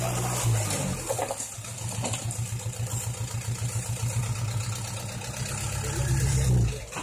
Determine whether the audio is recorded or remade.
recorded